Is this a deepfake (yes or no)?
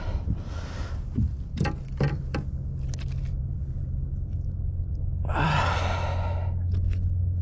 no